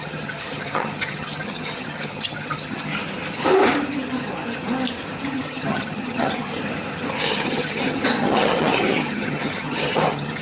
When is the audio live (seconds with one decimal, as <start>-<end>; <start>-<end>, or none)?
2.9-5.3; 6.5-7.3